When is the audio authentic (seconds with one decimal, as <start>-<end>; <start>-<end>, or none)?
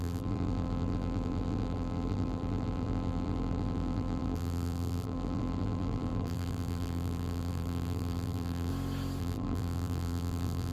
8.7-9.2